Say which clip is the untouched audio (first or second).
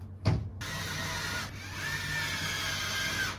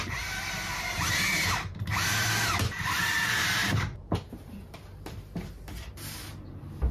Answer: first